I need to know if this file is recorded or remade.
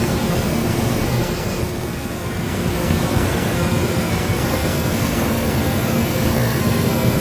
remade